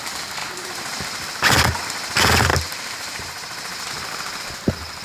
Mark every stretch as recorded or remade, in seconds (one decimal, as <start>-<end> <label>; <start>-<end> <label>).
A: 0.0-2.5 recorded; 2.5-3.9 remade; 3.9-5.0 recorded